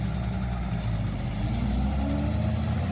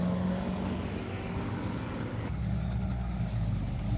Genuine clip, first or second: first